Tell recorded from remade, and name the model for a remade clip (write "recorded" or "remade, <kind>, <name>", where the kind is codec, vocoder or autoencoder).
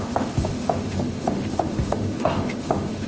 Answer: remade, autoencoder, DAC-VAE